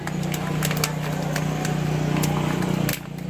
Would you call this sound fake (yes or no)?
no